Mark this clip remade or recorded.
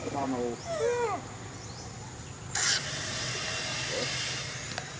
recorded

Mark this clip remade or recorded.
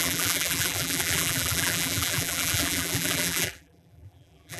remade